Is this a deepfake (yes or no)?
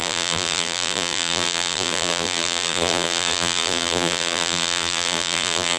yes